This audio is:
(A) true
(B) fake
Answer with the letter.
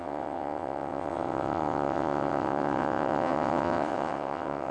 B